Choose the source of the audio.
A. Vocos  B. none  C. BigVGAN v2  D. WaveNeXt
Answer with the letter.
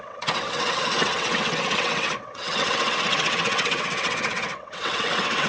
D